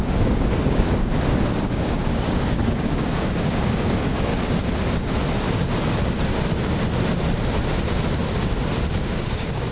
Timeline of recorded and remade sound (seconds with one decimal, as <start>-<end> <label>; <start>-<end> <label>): 0.0-1.1 remade; 1.1-1.7 recorded; 1.7-4.3 remade; 4.3-8.9 recorded; 8.9-9.7 remade